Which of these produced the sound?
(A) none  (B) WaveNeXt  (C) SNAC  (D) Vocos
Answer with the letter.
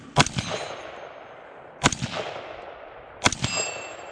A